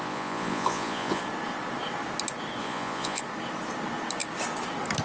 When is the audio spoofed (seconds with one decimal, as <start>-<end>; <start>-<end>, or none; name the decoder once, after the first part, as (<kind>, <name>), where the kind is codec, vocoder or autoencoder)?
0.0-1.2 (vocoder, Vocos); 2.6-3.2